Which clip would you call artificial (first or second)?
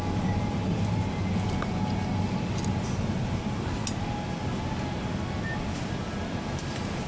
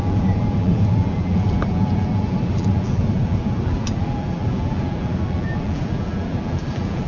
second